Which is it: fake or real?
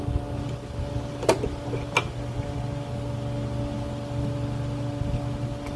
real